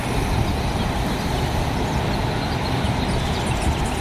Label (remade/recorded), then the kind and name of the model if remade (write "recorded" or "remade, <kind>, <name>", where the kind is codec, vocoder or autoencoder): remade, vocoder, BigVGAN v2